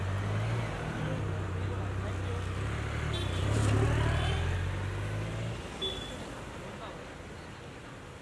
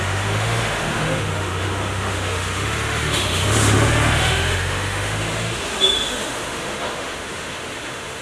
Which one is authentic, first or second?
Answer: first